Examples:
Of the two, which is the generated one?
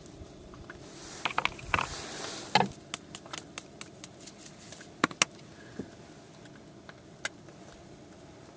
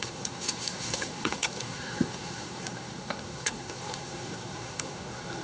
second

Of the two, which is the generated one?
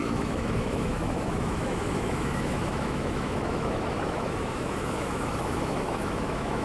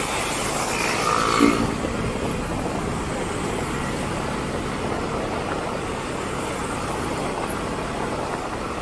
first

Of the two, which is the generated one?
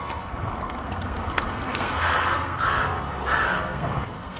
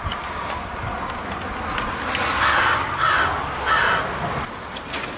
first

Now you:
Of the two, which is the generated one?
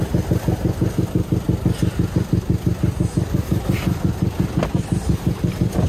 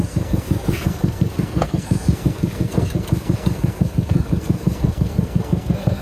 second